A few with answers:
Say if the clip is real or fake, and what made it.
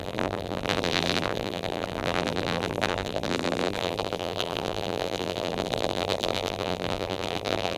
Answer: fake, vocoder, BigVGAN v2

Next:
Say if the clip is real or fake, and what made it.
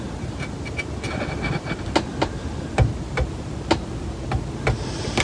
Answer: real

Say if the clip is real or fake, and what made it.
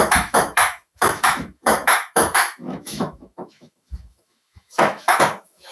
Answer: fake, autoencoder, DAC-VAE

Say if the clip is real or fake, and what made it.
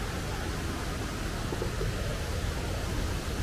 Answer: real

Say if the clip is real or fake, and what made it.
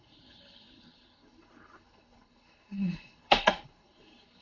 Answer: fake, codec, HILCodec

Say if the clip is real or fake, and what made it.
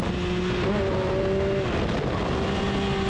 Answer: real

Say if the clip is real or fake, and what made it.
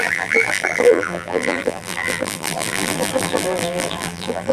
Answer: fake, vocoder, BigVGAN v2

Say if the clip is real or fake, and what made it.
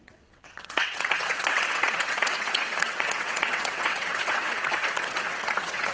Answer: fake, vocoder, WaveNeXt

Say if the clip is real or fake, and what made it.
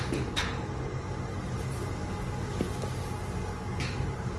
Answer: real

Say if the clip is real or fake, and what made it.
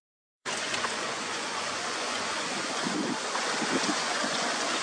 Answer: fake, vocoder, Vocos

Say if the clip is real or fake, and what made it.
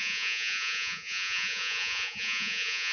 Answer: fake, vocoder, Vocos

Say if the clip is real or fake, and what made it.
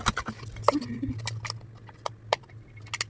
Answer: real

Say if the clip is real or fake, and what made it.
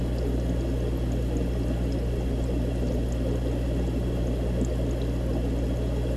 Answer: real